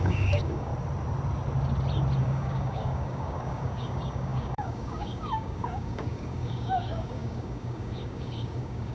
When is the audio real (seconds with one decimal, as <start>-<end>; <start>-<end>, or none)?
0.7-2.2